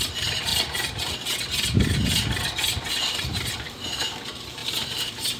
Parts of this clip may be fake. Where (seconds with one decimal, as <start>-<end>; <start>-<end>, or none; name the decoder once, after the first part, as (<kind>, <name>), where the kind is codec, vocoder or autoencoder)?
0.0-0.5 (vocoder, BigVGAN v2); 2.9-5.4